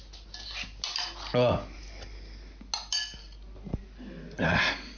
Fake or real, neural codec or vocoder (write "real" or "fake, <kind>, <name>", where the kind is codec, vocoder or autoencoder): real